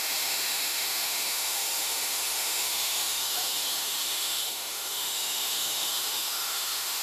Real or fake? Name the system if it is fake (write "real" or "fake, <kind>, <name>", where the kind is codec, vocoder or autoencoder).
fake, autoencoder, DAC-VAE